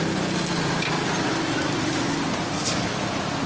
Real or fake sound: real